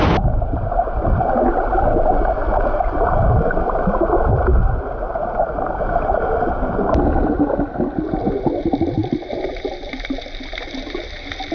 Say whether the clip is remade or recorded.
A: recorded